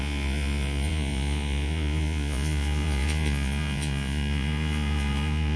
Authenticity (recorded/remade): remade